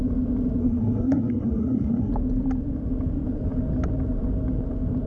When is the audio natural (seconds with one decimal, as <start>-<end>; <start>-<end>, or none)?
0.0-0.6; 2.1-5.1